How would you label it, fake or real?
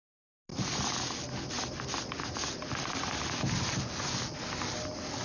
real